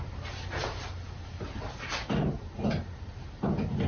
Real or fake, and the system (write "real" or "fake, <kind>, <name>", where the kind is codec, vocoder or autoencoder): real